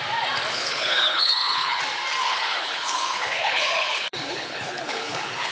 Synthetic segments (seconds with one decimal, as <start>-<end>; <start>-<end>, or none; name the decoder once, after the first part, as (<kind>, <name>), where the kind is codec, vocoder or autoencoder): 0.5-1.8 (codec, HILCodec); 2.2-5.5